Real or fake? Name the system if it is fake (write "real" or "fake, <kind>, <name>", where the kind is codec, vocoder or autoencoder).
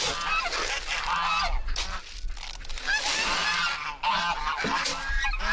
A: real